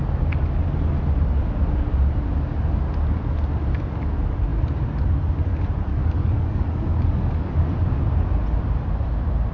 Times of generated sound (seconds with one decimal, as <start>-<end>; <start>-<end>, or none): 5.9-7.5